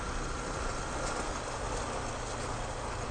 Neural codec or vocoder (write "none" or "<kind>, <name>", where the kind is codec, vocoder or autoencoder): none